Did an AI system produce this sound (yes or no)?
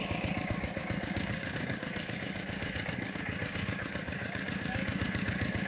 yes